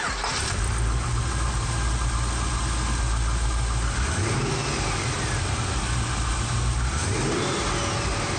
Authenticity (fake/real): real